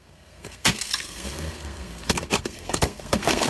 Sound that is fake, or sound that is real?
fake